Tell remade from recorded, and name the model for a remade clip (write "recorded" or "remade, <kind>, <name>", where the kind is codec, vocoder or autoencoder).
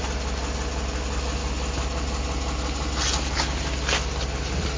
recorded